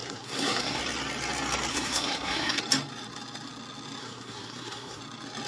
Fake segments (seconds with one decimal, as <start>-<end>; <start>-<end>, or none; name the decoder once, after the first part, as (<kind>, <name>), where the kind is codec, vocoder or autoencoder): 0.0-0.8 (codec, SNAC); 1.7-2.6; 4.0-5.0